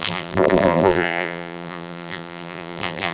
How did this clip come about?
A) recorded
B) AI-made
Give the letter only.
B